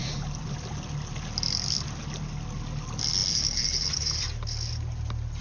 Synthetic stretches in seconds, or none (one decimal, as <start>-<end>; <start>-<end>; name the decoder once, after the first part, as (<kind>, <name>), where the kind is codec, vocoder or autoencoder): 0.0-0.7 (vocoder, BigVGAN v2); 3.2-4.2